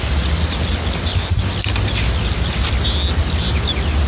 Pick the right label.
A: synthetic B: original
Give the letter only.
B